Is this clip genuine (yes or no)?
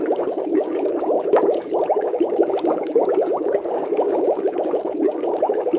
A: no